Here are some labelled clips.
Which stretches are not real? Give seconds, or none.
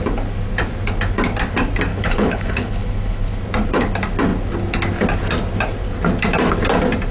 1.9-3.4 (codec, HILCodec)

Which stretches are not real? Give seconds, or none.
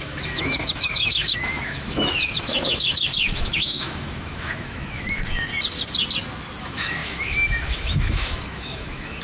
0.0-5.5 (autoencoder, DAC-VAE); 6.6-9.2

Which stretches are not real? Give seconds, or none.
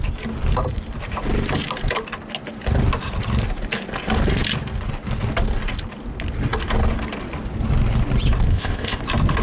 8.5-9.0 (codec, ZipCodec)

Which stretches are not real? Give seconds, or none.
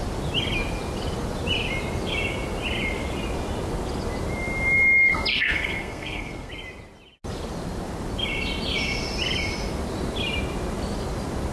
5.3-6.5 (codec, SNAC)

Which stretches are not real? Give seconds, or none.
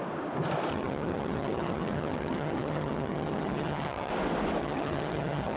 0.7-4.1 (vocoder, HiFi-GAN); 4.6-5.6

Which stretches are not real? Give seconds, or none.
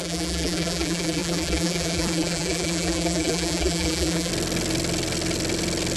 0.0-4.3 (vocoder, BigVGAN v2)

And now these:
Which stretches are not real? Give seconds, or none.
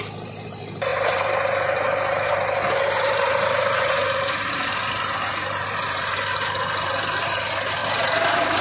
0.9-4.8 (vocoder, BigVGAN v2); 5.4-6.9; 7.8-8.6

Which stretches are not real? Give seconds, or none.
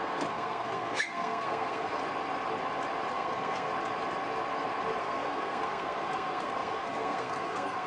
0.0-2.0 (codec, SNAC); 3.1-3.7; 5.0-7.9